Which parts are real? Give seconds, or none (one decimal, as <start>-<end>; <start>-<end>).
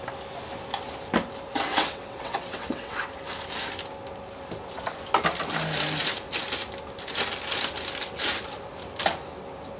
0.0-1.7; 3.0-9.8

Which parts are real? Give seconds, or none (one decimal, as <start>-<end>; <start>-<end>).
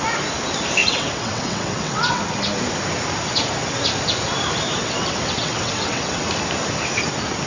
0.0-0.8; 2.2-4.8; 6.3-7.5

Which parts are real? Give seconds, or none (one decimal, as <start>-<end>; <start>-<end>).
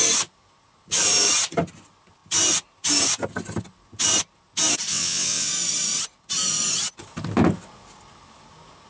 0.0-4.9; 5.5-8.9